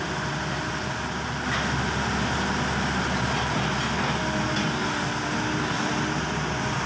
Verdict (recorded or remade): recorded